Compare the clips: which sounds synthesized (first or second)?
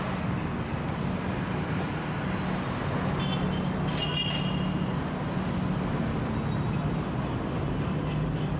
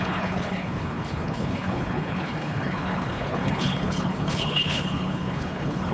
second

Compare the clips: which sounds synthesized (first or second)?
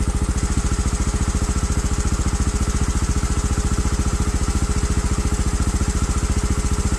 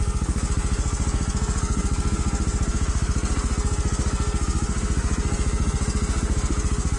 second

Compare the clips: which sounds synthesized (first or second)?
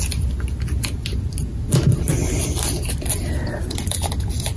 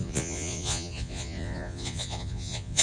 second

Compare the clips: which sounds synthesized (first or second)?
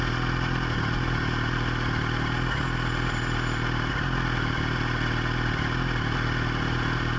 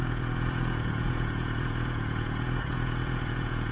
second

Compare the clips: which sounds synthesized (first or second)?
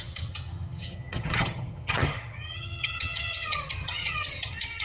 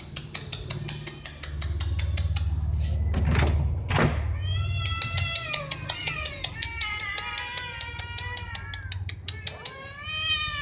first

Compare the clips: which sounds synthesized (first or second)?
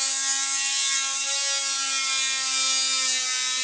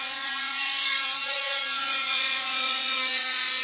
second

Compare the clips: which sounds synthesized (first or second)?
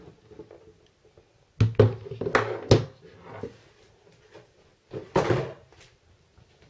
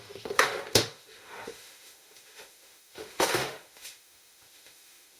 second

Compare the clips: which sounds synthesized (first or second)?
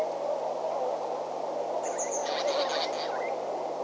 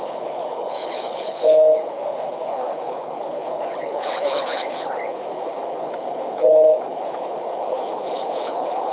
second